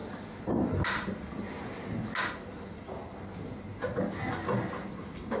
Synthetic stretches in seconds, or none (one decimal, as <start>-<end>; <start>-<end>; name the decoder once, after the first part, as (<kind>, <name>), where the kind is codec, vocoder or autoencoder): none